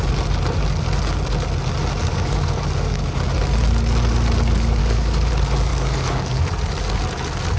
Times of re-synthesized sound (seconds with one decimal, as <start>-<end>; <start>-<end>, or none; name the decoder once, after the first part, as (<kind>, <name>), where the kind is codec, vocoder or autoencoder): 2.1-3.2 (codec, DAC); 4.8-5.3; 5.7-6.4